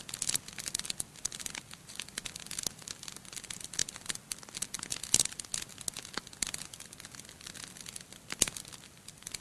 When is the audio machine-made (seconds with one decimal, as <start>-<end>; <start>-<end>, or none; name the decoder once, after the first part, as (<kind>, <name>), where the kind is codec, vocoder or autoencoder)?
none